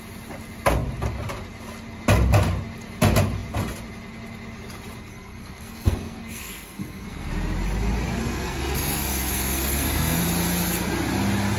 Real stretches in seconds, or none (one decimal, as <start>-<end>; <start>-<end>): 0.0-5.0; 7.3-8.2; 10.2-11.6